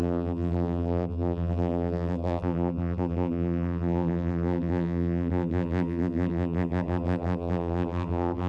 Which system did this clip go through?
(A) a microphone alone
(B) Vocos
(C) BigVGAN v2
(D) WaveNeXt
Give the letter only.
C